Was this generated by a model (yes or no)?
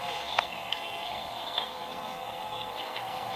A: yes